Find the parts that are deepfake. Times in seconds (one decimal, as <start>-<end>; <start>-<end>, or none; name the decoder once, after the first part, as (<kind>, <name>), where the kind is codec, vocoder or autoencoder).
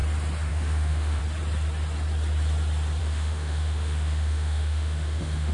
0.5-1.2 (autoencoder, DAC-VAE); 3.0-5.5